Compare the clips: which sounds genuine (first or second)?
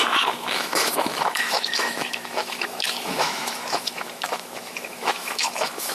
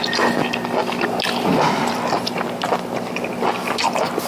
second